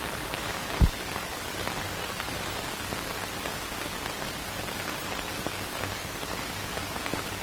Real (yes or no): no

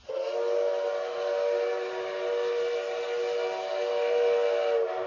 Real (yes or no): yes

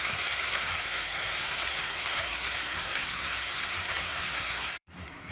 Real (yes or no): no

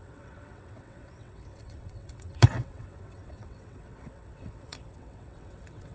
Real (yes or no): no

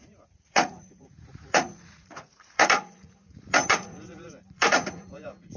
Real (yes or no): no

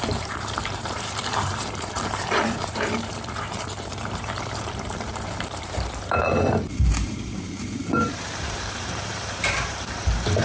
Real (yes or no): no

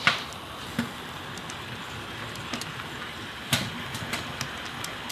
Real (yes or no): yes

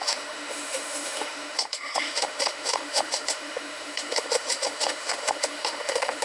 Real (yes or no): no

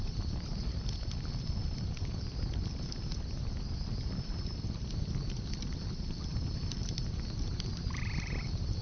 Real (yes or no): yes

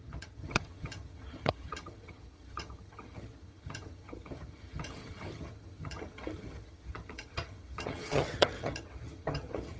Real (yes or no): no